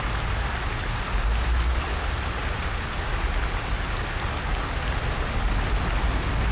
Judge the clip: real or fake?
real